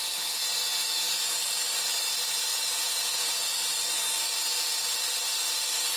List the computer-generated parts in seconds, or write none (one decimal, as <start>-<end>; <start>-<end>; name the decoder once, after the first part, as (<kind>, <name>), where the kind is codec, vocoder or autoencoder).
2.5-3.7 (vocoder, Vocos)